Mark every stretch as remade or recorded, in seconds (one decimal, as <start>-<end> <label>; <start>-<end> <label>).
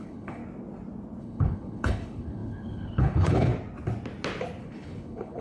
0.0-0.4 remade; 0.4-1.2 recorded; 1.2-3.5 remade; 3.5-4.6 recorded; 4.6-5.4 remade